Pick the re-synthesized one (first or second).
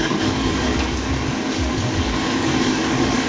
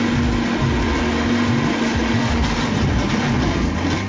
first